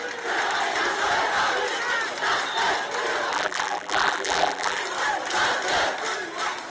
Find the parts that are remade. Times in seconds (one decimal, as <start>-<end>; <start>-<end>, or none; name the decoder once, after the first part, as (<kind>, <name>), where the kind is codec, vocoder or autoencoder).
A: 3.3-4.8 (vocoder, BigVGAN v2)